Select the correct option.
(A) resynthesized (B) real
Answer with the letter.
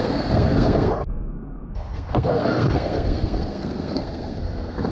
A